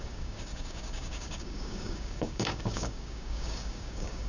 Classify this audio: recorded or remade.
remade